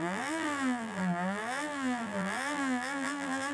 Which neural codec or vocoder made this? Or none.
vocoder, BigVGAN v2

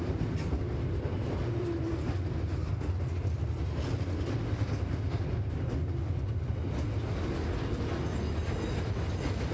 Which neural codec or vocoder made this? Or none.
none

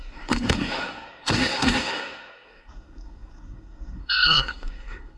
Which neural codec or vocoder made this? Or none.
codec, SNAC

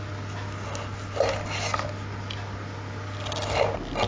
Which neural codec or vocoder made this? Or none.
none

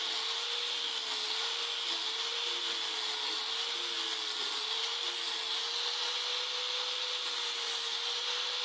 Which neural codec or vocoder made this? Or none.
none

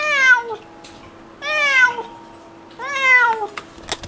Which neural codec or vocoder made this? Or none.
none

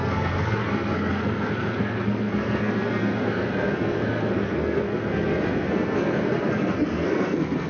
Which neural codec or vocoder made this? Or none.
codec, SNAC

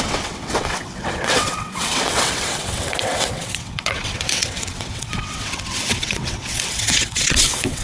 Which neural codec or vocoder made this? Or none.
vocoder, WaveNeXt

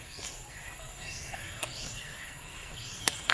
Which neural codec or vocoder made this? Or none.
codec, SNAC